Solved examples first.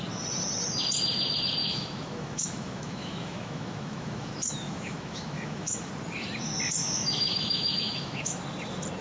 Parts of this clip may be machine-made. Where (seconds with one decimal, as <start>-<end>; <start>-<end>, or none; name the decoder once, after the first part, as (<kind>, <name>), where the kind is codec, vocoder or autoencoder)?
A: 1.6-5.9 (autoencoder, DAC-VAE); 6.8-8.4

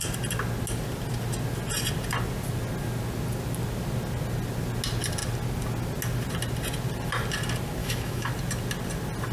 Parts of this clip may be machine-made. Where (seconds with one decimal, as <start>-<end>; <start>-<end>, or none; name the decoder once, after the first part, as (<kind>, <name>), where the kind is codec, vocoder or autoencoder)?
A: 7.8-8.3 (autoencoder, DAC-VAE)

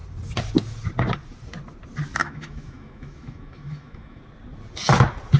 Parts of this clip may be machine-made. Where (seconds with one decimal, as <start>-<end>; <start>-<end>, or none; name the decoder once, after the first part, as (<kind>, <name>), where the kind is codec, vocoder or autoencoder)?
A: 2.2-4.2 (autoencoder, DAC-VAE)

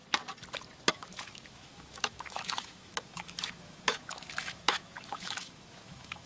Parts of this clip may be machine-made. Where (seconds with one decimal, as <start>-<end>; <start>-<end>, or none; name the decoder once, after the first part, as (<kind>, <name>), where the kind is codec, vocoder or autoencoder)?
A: 0.9-6.3 (autoencoder, DAC-VAE)

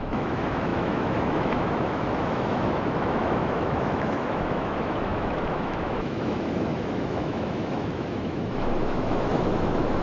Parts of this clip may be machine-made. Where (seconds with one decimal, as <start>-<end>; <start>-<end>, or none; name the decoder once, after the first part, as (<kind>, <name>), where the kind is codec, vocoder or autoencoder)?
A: 0.0-10.0 (autoencoder, DAC-VAE)

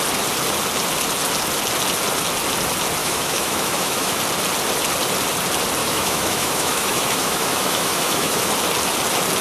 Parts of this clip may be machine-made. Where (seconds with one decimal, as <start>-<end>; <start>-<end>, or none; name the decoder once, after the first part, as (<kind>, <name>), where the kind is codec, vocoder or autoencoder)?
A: 3.0-4.2 (autoencoder, DAC-VAE); 5.8-8.5